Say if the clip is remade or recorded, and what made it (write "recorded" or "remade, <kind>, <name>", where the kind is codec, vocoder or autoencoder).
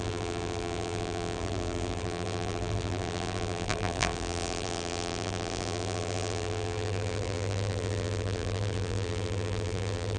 remade, vocoder, BigVGAN v2